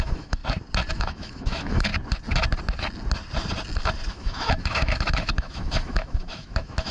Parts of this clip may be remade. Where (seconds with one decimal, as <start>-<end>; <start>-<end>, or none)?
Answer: 0.0-0.4; 0.9-1.9; 4.1-6.9